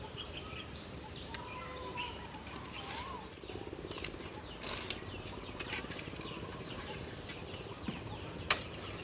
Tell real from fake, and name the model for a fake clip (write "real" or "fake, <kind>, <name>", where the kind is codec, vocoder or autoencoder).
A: fake, vocoder, BigVGAN v2